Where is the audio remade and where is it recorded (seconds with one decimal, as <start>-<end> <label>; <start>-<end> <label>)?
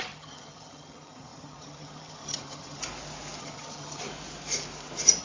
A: 0.0-2.8 remade; 2.8-3.4 recorded; 3.4-4.1 remade; 4.1-5.2 recorded